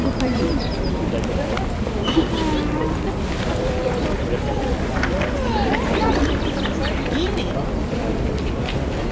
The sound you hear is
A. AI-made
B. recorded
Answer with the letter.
B